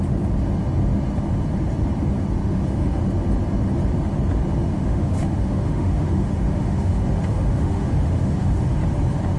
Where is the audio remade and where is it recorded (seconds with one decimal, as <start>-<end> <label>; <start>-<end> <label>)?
0.0-2.4 recorded; 2.4-3.0 remade; 3.0-4.7 recorded; 4.7-8.8 remade; 8.8-9.4 recorded